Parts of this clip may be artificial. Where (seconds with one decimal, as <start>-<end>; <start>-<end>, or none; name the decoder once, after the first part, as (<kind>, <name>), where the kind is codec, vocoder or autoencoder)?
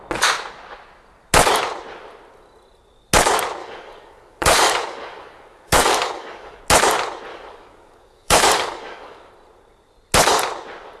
3.6-6.6 (codec, DAC); 7.3-9.3